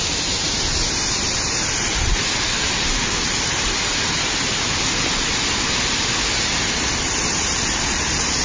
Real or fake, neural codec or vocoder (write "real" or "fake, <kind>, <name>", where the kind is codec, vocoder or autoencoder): real